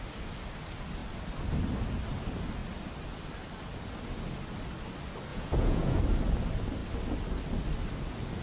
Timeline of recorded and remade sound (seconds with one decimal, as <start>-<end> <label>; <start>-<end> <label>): 0.0-5.3 recorded; 5.3-6.0 remade; 6.0-8.4 recorded